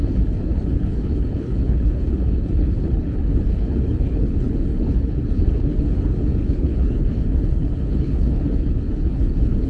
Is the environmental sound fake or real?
fake